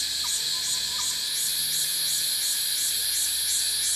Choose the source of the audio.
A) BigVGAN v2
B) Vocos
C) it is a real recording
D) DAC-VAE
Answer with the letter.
C